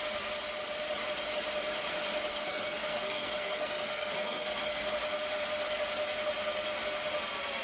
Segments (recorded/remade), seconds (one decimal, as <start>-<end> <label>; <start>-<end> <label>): 0.0-2.3 recorded; 2.3-4.9 remade; 4.9-7.6 recorded